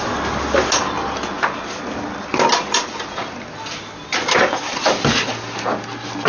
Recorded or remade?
recorded